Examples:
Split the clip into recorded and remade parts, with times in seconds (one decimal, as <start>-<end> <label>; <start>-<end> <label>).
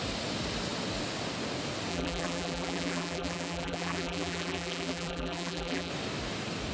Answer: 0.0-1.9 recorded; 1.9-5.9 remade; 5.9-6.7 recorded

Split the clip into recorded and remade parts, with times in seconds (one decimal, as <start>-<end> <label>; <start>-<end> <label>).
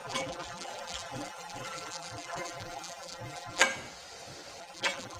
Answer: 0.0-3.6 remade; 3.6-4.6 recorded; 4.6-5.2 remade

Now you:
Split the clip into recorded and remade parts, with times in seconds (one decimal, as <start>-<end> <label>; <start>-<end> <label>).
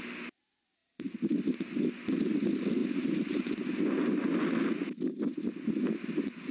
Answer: 0.0-2.8 recorded; 2.8-3.8 remade; 3.8-6.5 recorded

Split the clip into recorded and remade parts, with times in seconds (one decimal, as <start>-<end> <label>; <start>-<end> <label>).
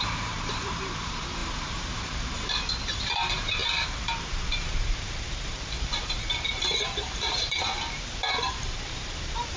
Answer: 0.0-9.6 remade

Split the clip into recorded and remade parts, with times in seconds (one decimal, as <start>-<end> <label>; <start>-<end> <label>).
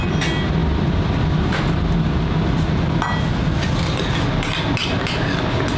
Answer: 0.0-5.8 recorded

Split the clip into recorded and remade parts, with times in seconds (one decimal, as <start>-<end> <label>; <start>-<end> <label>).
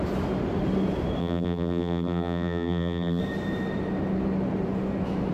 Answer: 0.0-1.2 recorded; 1.2-3.2 remade; 3.2-5.3 recorded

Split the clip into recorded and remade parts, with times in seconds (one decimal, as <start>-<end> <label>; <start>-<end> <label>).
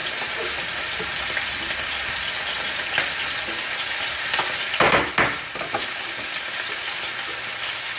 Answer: 0.0-8.0 recorded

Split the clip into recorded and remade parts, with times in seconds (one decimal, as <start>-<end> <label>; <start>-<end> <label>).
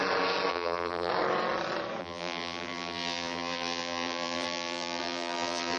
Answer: 0.0-0.5 recorded; 0.5-1.1 remade; 1.1-2.0 recorded; 2.0-5.8 remade